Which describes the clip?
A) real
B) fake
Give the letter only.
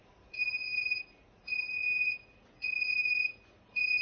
B